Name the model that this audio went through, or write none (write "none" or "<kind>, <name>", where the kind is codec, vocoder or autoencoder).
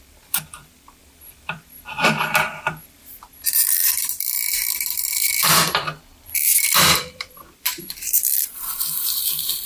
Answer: vocoder, BigVGAN v2